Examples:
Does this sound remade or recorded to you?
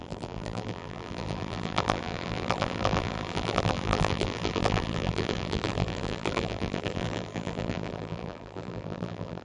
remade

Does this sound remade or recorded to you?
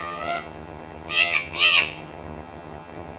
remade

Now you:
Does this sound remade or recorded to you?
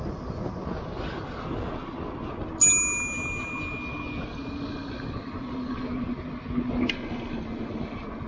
recorded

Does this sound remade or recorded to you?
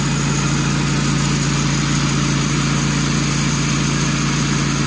recorded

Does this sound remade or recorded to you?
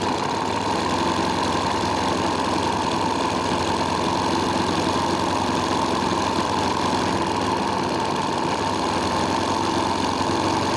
recorded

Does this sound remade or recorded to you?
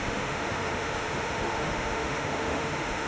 remade